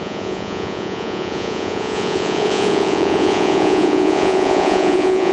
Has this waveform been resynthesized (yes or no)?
yes